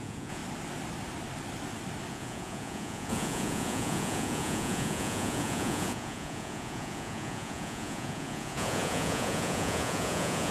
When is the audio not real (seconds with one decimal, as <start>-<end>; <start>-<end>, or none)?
0.0-0.4; 2.1-10.5